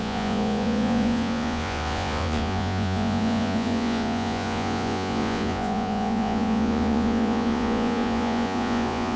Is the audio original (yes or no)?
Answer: no